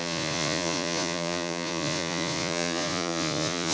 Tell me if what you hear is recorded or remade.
remade